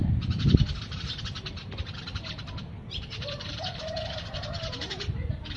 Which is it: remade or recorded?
remade